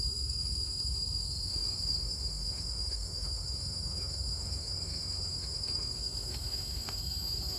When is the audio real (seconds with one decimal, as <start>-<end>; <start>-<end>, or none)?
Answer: none